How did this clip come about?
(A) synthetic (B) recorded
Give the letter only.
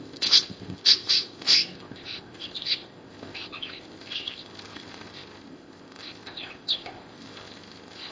A